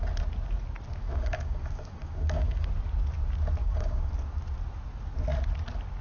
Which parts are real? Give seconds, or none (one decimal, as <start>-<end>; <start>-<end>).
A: 0.0-1.0; 2.7-3.6; 4.1-6.0